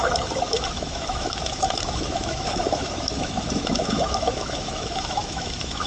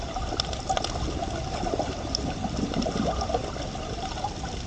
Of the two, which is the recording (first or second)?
second